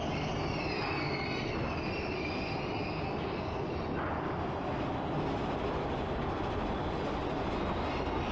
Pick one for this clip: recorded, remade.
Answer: recorded